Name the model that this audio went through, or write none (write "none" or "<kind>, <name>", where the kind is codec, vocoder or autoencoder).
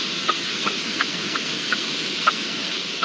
codec, SNAC